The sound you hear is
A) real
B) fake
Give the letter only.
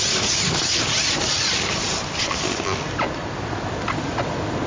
A